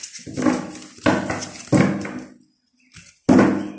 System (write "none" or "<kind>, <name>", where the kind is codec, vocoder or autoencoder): none